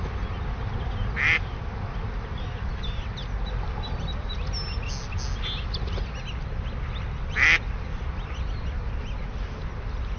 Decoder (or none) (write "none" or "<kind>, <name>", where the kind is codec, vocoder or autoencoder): none